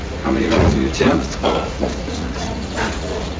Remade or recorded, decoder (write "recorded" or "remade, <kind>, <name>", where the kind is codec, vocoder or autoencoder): remade, vocoder, Vocos